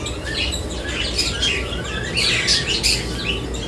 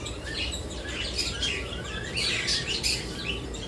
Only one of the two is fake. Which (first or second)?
second